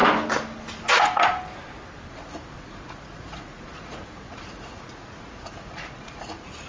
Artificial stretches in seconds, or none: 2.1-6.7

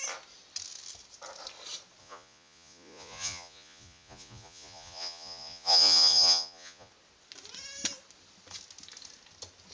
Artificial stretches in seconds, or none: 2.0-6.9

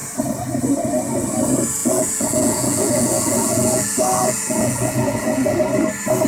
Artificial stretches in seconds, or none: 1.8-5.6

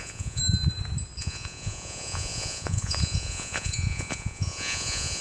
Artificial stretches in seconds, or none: 0.0-0.4; 1.2-5.2